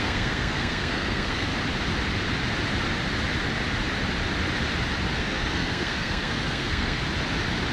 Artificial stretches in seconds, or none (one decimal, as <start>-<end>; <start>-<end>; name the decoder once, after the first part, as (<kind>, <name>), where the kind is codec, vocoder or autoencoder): 0.0-1.5 (codec, SNAC); 5.2-7.0